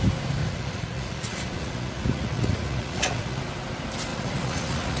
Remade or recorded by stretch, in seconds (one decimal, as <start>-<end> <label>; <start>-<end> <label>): 0.0-0.4 recorded; 0.4-3.4 remade; 3.4-4.1 recorded; 4.1-5.0 remade